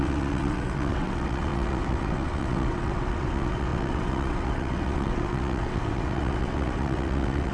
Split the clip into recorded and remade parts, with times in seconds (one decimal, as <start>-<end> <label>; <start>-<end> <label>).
0.0-7.5 remade

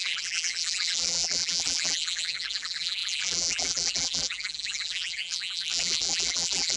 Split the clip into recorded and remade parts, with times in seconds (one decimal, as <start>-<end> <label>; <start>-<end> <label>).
0.0-6.8 remade

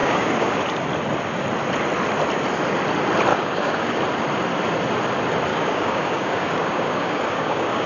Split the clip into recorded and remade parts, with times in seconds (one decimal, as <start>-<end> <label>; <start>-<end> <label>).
0.0-0.6 remade; 0.6-3.3 recorded; 3.3-4.0 remade; 4.0-5.5 recorded; 5.5-7.9 remade